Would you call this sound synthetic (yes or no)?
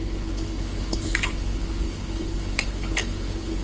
yes